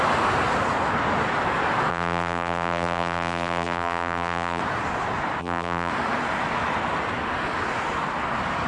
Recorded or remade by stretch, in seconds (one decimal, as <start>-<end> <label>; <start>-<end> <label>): 0.0-1.9 recorded; 1.9-4.6 remade; 4.6-5.4 recorded; 5.4-5.9 remade; 5.9-8.7 recorded